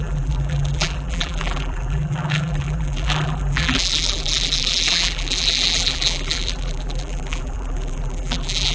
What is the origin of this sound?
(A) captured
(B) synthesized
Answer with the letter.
B